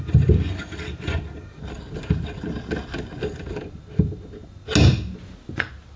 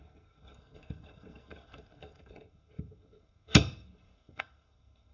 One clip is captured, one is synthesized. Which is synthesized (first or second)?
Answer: second